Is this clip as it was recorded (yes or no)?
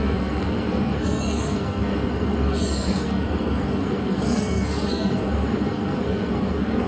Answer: no